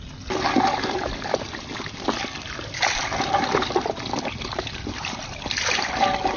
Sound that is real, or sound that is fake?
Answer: real